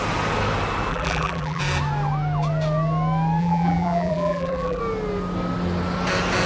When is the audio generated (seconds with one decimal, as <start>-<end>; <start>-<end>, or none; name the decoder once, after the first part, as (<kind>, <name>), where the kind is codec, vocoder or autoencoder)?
0.9-1.6 (vocoder, BigVGAN v2); 3.4-4.8